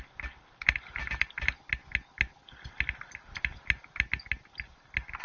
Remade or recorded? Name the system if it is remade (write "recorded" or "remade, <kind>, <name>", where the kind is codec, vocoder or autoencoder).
recorded